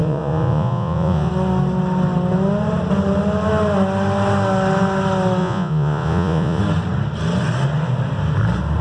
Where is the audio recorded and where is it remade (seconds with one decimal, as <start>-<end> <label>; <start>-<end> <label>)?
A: 0.0-1.3 remade; 1.3-5.4 recorded; 5.4-6.6 remade; 6.6-8.8 recorded